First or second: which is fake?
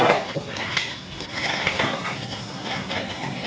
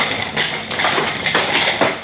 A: first